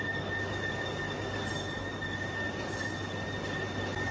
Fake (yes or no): no